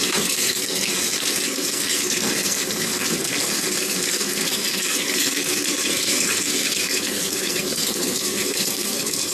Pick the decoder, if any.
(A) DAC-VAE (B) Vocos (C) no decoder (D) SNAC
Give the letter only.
D